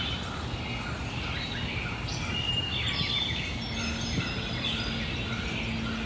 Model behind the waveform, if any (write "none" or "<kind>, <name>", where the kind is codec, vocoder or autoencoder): none